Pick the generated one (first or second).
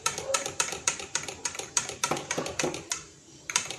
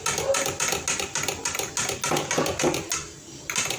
first